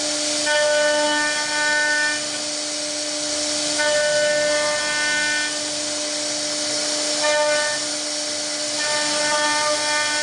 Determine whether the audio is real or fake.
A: real